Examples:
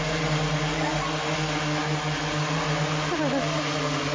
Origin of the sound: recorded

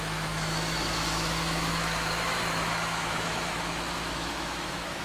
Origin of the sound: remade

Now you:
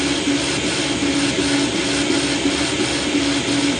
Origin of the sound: recorded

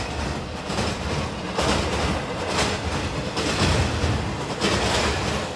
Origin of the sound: recorded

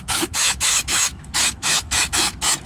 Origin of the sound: remade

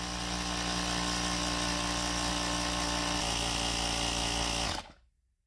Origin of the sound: recorded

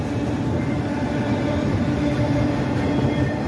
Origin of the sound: recorded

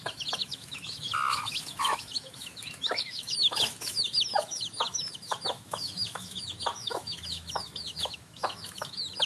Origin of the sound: remade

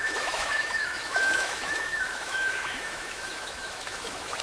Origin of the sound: remade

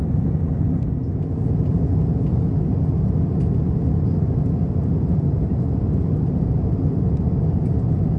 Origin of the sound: recorded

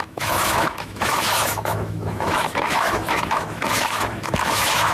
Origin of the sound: remade